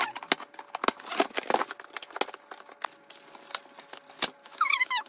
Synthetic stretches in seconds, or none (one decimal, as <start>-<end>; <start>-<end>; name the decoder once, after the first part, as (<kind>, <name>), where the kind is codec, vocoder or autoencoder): 4.4-5.1 (autoencoder, DAC-VAE)